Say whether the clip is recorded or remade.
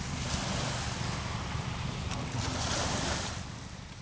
recorded